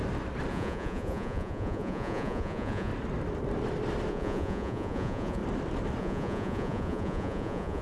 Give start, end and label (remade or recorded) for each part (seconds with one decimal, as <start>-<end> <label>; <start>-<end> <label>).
0.0-0.5 recorded; 0.5-2.9 remade; 2.9-4.1 recorded; 4.1-5.4 remade; 5.4-6.0 recorded; 6.0-7.8 remade

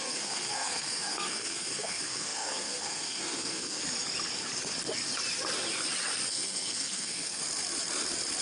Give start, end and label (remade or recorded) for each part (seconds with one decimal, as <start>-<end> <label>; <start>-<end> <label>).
0.0-3.8 remade; 3.8-6.3 recorded; 6.3-7.4 remade; 7.4-8.4 recorded

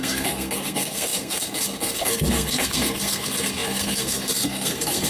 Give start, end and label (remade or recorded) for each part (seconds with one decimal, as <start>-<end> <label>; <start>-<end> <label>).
0.0-5.1 remade